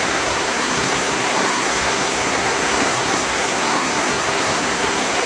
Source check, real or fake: fake